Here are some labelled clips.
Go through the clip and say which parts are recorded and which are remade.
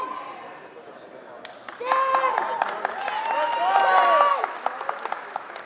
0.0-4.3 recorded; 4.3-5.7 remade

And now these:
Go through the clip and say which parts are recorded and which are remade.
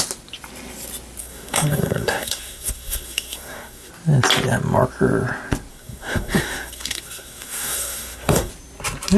0.0-1.2 recorded; 1.2-3.9 remade; 3.9-5.7 recorded; 5.7-8.5 remade; 8.5-9.2 recorded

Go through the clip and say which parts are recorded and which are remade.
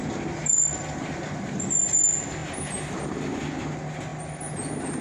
0.0-5.0 recorded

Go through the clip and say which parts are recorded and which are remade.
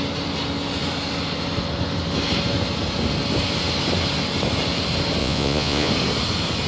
0.0-5.2 recorded; 5.2-5.9 remade; 5.9-6.7 recorded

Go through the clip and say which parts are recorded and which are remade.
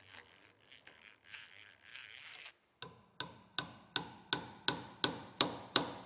0.0-1.9 recorded; 1.9-2.5 remade; 2.5-5.2 recorded; 5.2-6.1 remade